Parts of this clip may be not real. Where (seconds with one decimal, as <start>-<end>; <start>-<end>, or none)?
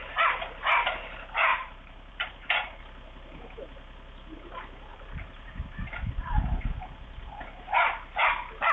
1.5-2.8; 4.9-5.6